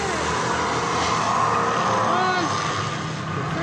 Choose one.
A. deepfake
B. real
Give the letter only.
B